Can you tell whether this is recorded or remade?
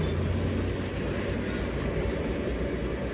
recorded